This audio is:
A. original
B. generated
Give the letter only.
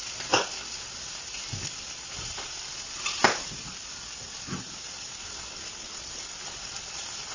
A